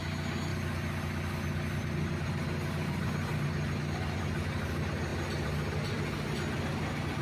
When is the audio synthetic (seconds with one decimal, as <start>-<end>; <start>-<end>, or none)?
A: none